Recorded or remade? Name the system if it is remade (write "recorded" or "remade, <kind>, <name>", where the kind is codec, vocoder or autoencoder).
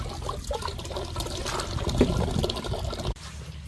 recorded